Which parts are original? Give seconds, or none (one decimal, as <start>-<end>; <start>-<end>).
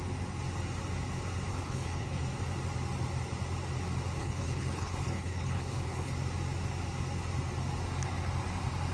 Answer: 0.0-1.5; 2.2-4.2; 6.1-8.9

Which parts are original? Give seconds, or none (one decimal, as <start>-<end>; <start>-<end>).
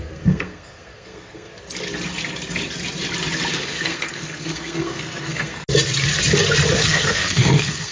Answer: 1.5-3.5; 5.6-6.7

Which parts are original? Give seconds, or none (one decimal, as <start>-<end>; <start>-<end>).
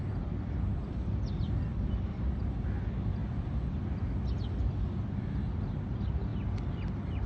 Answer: 0.0-0.7; 2.3-3.2; 3.8-7.3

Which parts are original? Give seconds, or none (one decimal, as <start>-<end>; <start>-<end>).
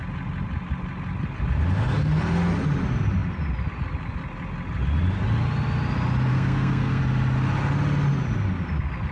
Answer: 0.0-6.3; 7.0-9.1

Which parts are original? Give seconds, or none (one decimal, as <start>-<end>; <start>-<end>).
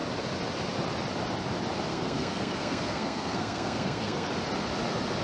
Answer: 0.0-1.9; 4.3-5.2